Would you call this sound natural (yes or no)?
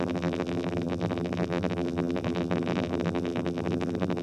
no